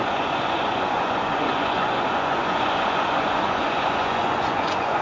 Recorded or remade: remade